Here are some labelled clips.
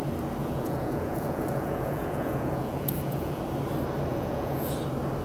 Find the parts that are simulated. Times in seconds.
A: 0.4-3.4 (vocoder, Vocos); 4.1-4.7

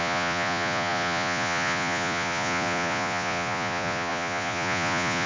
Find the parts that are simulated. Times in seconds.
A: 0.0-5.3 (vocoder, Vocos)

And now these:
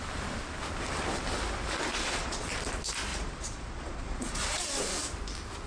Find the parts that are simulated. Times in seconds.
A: 1.9-2.5 (vocoder, Vocos); 3.1-4.6

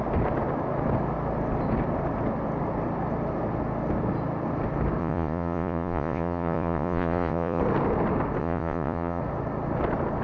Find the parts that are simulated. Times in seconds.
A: 5.0-7.6 (vocoder, Vocos); 8.4-9.2

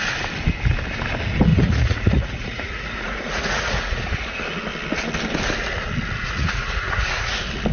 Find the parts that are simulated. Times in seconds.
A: 1.5-4.4 (vocoder, Vocos); 6.2-7.3

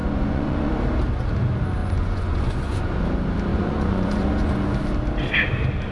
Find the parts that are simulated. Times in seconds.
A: 0.0-0.7 (vocoder, Vocos); 1.8-2.9; 3.5-4.5